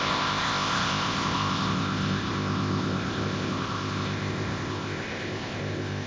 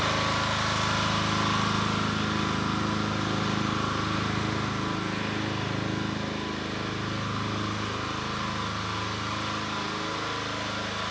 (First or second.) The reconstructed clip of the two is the first